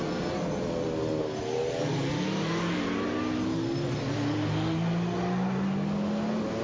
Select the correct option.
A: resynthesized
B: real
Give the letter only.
B